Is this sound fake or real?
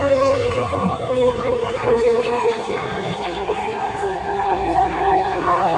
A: fake